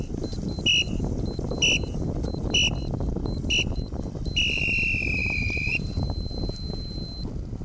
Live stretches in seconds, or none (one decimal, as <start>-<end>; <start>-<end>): 0.0-5.2; 6.0-7.6